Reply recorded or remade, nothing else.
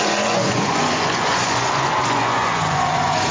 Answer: remade